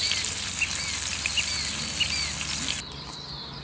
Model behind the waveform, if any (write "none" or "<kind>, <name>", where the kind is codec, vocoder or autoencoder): none